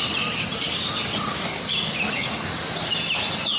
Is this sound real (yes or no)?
yes